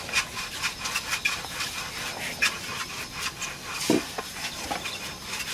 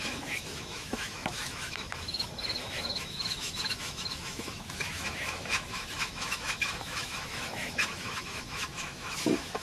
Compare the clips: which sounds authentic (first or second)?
first